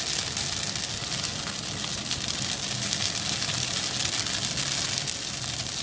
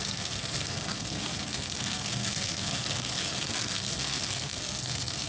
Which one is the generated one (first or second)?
second